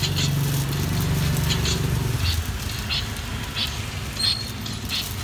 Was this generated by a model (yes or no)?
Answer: no